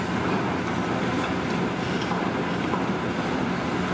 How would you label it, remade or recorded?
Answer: recorded